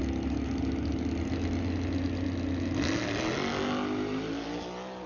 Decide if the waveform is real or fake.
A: real